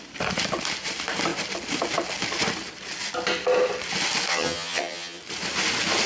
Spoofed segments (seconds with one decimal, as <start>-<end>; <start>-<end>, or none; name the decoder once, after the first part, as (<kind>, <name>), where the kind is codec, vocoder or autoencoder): 4.3-5.2 (vocoder, HiFi-GAN)